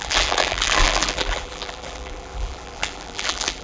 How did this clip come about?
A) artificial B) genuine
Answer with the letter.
A